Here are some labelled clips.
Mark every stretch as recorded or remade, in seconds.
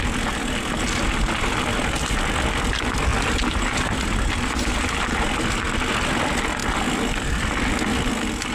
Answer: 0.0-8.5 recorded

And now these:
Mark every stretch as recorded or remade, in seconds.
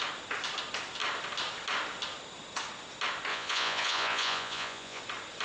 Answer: 0.0-3.3 recorded; 3.3-5.0 remade; 5.0-5.4 recorded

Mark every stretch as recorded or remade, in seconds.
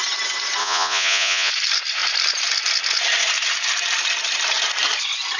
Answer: 0.0-0.6 recorded; 0.6-1.5 remade; 1.5-5.4 recorded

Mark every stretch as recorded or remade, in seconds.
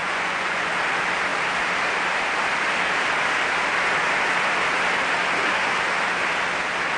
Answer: 0.0-0.7 remade; 0.7-7.0 recorded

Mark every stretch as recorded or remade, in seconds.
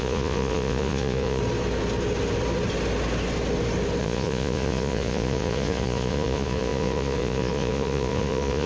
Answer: 0.0-1.4 remade; 1.4-4.0 recorded; 4.0-8.7 remade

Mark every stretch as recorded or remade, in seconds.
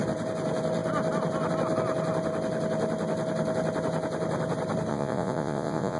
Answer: 0.0-4.9 recorded; 4.9-6.0 remade